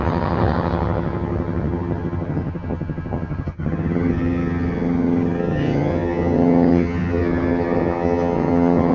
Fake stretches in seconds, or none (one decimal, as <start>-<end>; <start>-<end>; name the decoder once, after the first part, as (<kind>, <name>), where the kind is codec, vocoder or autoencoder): 0.0-8.9 (vocoder, HiFi-GAN)